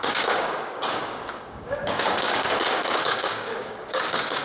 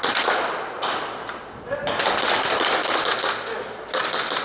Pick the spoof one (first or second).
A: first